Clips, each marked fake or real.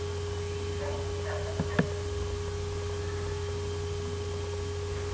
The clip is real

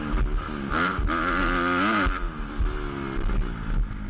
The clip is real